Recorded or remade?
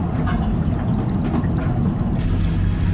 recorded